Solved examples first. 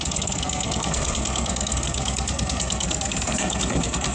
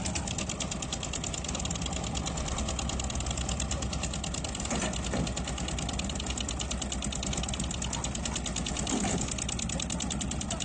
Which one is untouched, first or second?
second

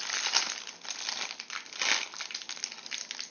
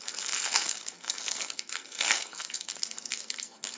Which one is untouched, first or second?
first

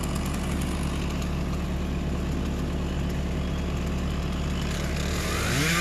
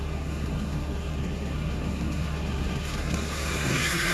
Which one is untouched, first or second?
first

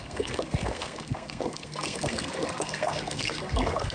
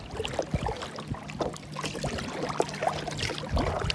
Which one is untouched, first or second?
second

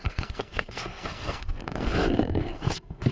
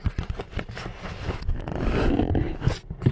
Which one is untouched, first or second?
second